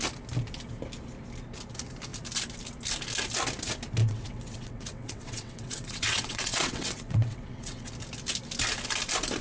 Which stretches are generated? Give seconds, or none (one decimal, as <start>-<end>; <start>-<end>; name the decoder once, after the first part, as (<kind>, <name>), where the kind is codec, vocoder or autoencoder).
4.0-7.9 (vocoder, WaveNeXt)